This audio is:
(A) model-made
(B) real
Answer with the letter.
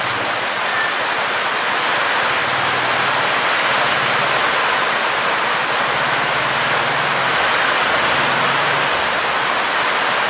B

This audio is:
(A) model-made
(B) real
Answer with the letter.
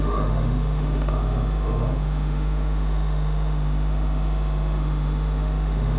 A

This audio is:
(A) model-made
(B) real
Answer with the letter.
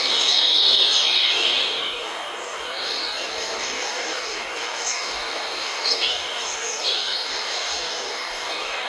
A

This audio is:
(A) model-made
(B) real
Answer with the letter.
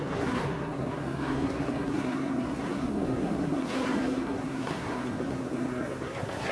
A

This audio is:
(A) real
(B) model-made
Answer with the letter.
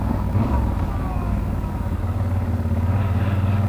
B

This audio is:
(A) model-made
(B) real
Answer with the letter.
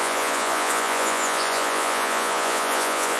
A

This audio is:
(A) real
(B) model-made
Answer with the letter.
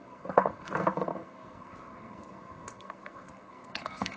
B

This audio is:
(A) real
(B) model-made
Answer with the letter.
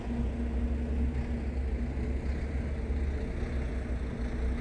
A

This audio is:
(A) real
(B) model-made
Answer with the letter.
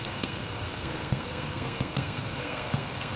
B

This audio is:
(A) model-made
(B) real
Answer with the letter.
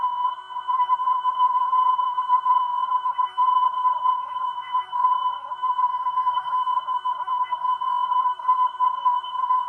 A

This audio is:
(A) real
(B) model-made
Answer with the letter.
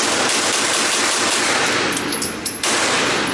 A